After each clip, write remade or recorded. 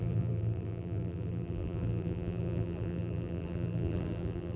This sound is remade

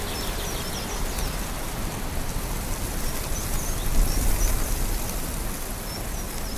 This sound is recorded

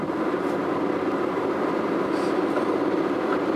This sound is recorded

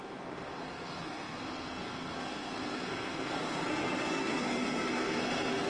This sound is remade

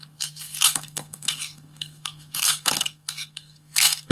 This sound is remade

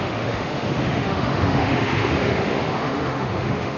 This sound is remade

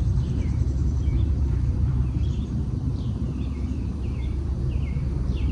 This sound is remade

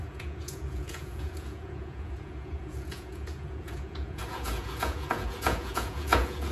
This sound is remade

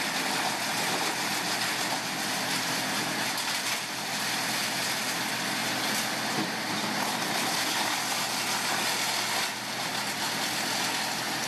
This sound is recorded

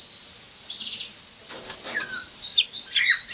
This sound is recorded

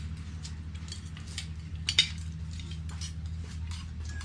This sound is recorded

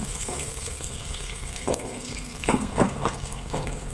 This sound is remade